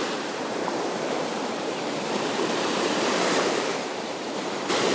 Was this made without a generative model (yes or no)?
no